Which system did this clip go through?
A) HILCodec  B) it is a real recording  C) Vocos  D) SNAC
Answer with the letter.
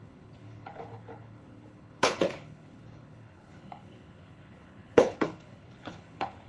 A